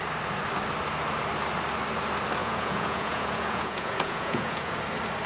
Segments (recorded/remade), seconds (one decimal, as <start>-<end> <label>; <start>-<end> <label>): 0.0-2.4 recorded; 2.4-4.7 remade; 4.7-5.3 recorded